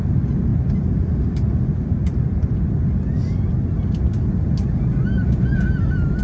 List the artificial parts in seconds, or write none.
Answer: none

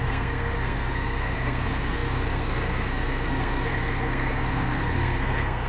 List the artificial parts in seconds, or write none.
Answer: 0.0-5.7 (codec, SNAC)

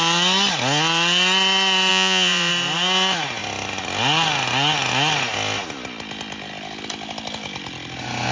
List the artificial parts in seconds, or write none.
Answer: 1.9-2.5 (vocoder, Vocos)

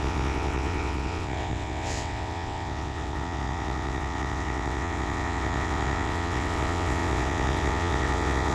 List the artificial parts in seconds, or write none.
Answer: 0.0-8.5 (vocoder, WaveNeXt)

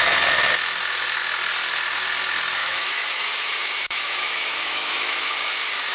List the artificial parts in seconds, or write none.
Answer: 2.6-5.3 (autoencoder, DAC-VAE)

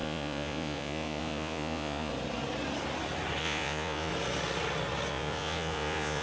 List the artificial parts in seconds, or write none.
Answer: 0.0-2.1 (vocoder, Vocos); 3.4-4.1; 5.1-6.2

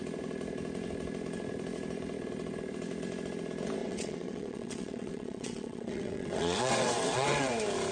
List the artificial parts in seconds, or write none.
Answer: 3.8-7.5 (vocoder, WaveNeXt)

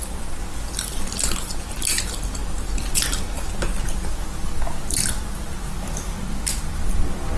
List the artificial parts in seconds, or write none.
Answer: none